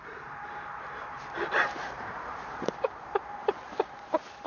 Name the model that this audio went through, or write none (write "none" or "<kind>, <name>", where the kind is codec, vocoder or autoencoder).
vocoder, BigVGAN v2